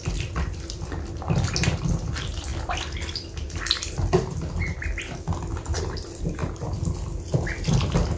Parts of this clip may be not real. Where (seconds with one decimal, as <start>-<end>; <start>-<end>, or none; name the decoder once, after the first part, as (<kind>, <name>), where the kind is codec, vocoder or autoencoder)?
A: none